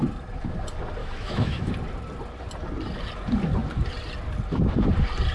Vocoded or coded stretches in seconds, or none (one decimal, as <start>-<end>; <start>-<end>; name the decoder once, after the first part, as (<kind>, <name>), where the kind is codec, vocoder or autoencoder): 1.0-1.7 (autoencoder, DAC-VAE)